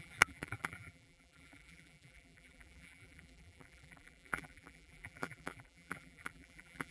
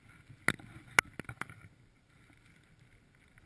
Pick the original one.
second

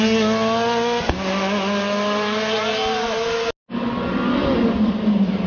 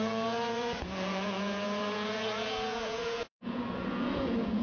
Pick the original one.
first